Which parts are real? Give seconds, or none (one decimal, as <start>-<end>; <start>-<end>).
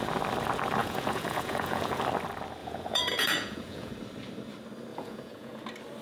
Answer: 0.0-0.8; 2.0-2.6; 3.9-4.9; 5.6-6.0